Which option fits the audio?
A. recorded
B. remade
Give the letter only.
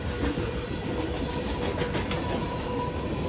A